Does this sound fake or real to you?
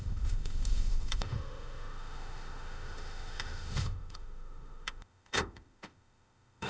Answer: fake